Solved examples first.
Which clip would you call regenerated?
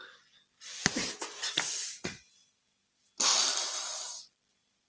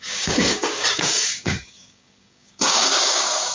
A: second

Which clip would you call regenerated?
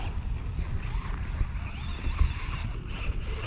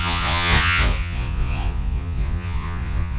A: second